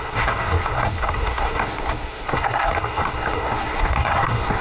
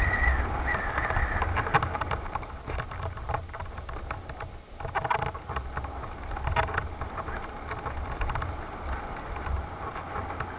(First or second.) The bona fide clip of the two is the second